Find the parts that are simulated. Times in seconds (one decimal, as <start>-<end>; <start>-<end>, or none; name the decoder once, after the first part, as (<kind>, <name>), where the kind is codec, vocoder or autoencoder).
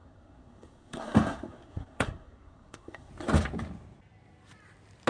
0.0-3.1 (codec, SNAC)